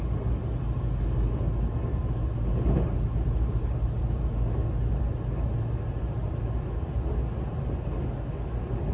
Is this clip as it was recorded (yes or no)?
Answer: yes